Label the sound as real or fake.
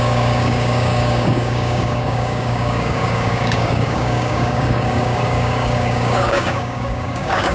fake